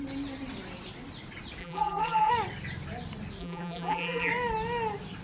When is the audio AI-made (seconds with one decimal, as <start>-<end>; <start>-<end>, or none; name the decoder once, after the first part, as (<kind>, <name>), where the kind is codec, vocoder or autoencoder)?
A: 1.6-2.3 (vocoder, BigVGAN v2); 3.4-4.3